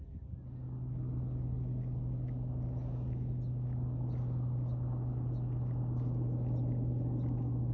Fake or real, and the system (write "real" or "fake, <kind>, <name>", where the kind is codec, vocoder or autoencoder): real